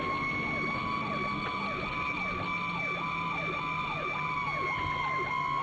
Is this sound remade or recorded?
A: recorded